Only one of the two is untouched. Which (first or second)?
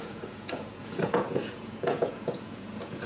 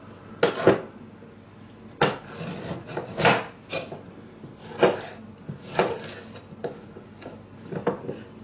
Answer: second